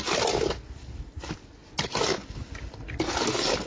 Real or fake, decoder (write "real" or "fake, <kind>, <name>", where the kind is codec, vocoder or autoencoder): real